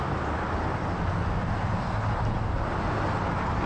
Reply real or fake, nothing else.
real